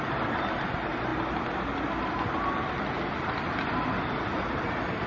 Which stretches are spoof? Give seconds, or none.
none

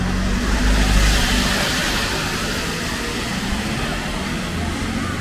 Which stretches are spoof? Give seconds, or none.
none

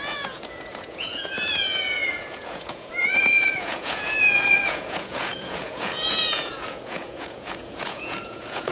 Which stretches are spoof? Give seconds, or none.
0.0-8.7 (vocoder, Vocos)

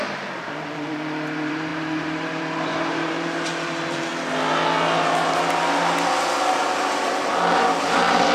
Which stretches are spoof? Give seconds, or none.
0.0-4.1 (vocoder, BigVGAN v2); 6.4-8.3

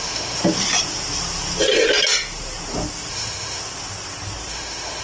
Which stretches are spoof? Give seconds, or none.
0.0-0.4 (autoencoder, DAC-VAE); 3.1-3.6; 4.5-5.0

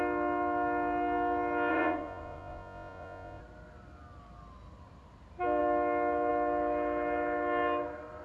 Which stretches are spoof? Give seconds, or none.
1.7-3.4 (vocoder, Vocos)

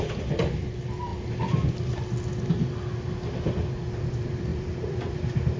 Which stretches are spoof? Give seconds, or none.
4.5-5.6 (vocoder, BigVGAN v2)

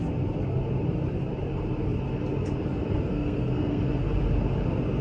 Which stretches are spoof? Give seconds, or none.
3.1-3.8 (codec, SNAC)